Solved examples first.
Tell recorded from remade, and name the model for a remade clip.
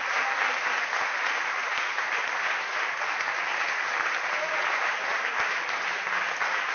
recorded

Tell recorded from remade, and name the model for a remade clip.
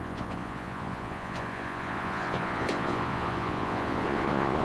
remade, vocoder, Vocos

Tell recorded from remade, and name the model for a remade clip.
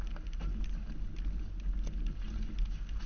recorded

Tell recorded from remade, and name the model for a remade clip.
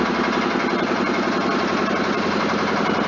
recorded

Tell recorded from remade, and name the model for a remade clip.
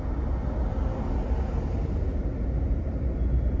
recorded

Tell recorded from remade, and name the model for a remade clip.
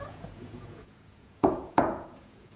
remade, vocoder, Vocos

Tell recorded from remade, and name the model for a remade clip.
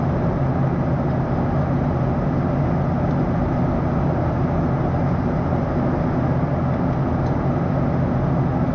recorded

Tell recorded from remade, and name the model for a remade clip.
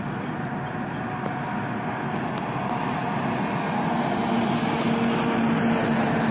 recorded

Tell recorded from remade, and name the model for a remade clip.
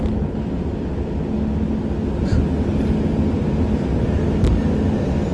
recorded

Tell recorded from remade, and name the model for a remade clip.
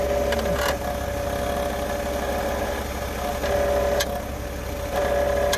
recorded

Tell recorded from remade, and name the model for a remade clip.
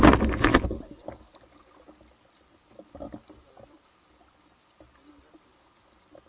recorded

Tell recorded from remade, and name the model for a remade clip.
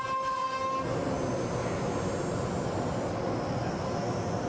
recorded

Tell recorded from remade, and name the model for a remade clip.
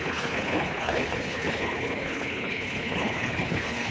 remade, codec, HILCodec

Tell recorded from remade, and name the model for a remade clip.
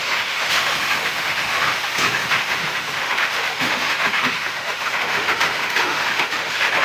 remade, autoencoder, DAC-VAE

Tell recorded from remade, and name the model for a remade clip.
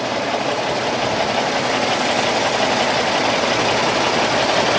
remade, vocoder, BigVGAN v2